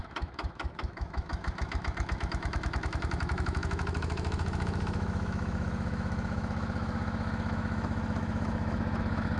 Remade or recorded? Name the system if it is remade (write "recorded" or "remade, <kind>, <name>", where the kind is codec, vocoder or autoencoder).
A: remade, autoencoder, DAC-VAE